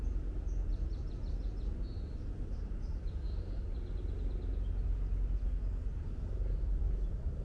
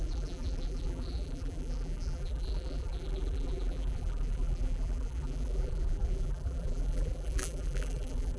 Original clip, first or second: first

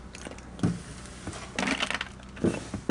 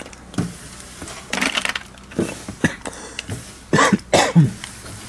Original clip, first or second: first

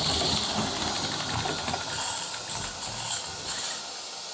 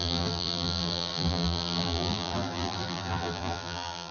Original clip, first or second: first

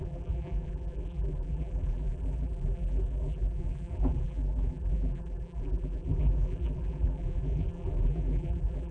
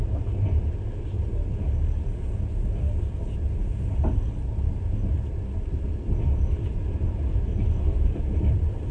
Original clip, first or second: second